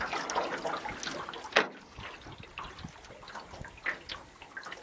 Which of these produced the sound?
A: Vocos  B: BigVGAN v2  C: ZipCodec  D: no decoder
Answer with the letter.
D